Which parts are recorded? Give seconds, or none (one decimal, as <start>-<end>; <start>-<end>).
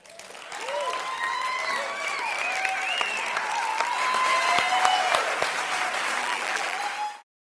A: 0.0-6.2; 6.8-7.4